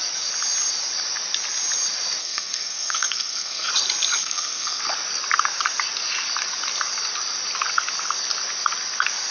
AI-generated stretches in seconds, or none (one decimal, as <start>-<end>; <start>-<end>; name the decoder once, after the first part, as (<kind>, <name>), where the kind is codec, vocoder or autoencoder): 2.2-3.7 (codec, SNAC); 4.2-4.8